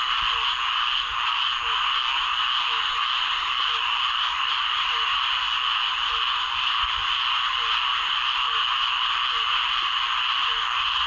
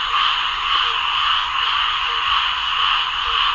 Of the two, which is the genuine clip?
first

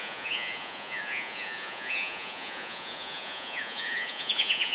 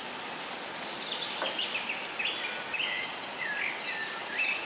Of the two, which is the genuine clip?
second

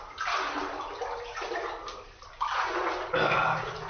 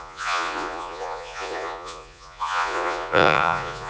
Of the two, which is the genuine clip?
first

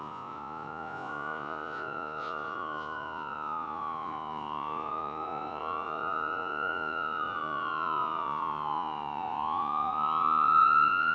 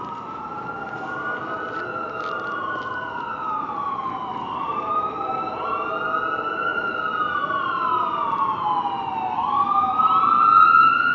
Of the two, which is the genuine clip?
second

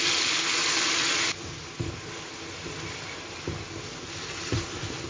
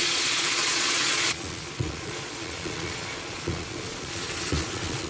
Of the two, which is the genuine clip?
first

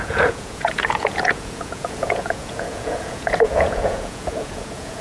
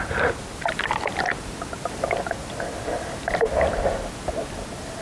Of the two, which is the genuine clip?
second